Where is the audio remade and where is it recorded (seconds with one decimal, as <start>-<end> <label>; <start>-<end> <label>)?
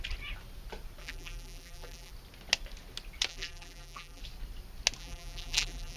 0.0-1.0 recorded; 1.0-2.1 remade; 2.1-3.3 recorded; 3.3-4.2 remade; 4.2-5.0 recorded; 5.0-6.0 remade